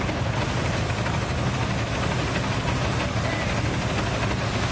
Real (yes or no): yes